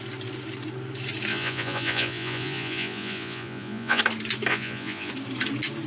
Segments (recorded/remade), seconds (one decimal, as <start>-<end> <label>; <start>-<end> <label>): 0.0-1.3 recorded; 1.3-4.0 remade; 4.0-4.5 recorded; 4.5-5.1 remade; 5.1-5.9 recorded